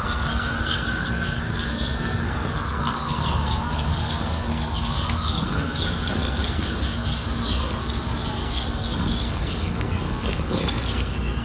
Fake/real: fake